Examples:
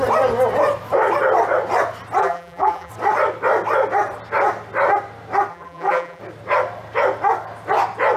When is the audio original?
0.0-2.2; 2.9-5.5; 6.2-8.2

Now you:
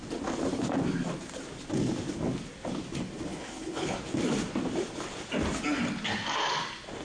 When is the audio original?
0.0-3.3; 4.0-7.0

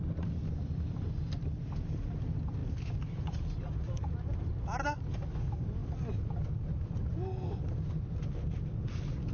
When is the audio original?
0.0-9.3